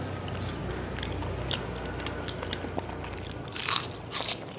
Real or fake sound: real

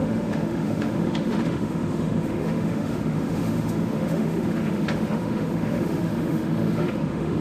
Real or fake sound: fake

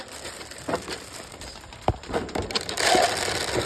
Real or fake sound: real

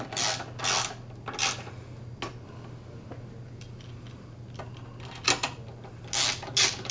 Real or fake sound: real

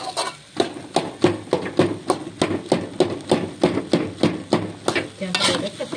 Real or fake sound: real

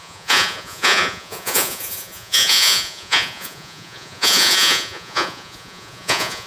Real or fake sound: fake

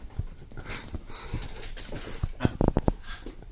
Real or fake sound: real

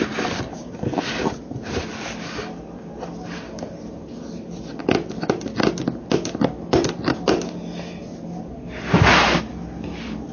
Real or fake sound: real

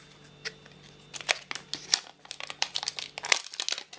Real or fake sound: real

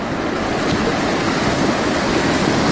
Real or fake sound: real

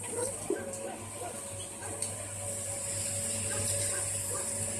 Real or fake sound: real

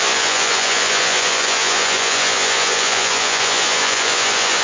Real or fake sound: fake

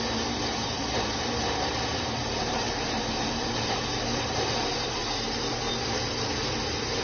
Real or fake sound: fake